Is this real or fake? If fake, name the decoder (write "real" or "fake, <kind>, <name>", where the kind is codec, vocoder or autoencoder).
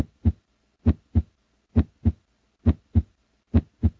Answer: real